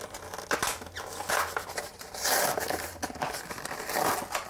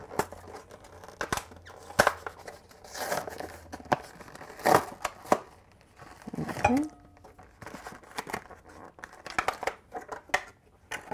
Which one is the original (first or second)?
second